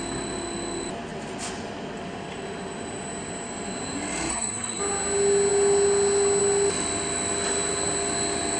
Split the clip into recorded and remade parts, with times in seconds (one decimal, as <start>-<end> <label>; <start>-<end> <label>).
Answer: 0.0-4.3 recorded; 4.3-4.8 remade; 4.8-8.6 recorded